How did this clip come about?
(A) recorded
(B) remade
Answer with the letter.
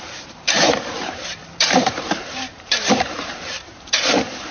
B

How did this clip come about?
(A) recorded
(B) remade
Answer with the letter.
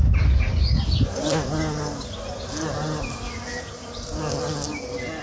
A